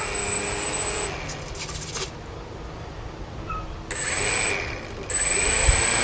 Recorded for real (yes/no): yes